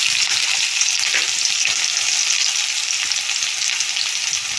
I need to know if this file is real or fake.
real